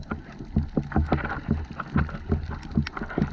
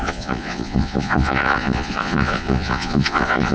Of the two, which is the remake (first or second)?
second